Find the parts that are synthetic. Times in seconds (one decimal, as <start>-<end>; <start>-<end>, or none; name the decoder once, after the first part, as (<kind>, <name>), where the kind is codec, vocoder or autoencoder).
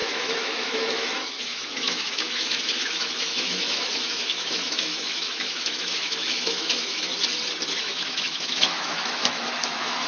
0.0-7.1 (autoencoder, DAC-VAE); 7.8-10.1